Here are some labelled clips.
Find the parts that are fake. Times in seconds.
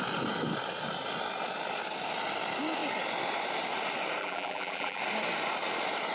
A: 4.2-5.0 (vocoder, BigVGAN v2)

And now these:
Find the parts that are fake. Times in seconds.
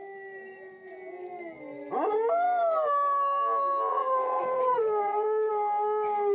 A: 3.9-5.5 (vocoder, Vocos)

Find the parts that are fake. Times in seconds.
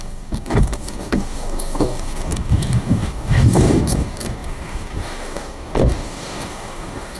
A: 0.0-7.2 (codec, DAC)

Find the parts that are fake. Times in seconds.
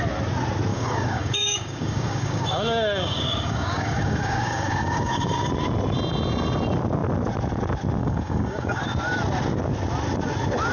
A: 0.7-5.5 (codec, DAC); 8.0-8.8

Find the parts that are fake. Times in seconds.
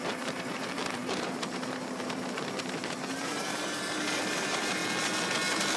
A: 0.0-4.8 (vocoder, BigVGAN v2)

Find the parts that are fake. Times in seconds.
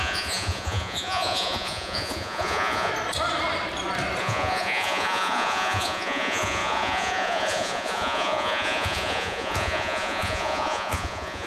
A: 0.0-2.9 (vocoder, Vocos); 4.2-11.5